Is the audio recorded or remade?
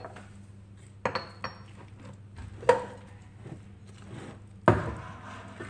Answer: recorded